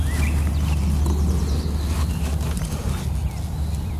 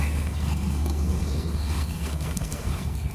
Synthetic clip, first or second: second